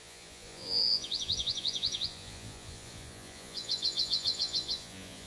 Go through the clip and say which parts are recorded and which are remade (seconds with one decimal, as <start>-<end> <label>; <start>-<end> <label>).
0.0-5.3 remade